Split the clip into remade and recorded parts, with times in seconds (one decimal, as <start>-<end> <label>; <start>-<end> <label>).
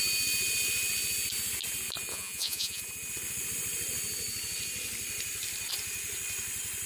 0.0-2.1 recorded; 2.1-2.8 remade; 2.8-6.9 recorded